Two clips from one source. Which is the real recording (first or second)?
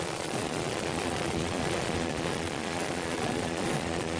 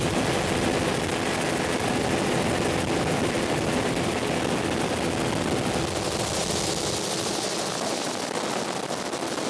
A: second